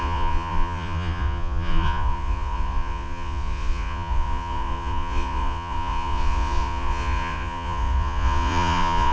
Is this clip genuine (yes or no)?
no